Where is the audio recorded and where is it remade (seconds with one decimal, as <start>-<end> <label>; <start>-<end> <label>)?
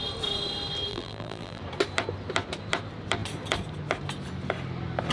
0.0-0.9 recorded; 0.9-1.6 remade; 1.6-5.1 recorded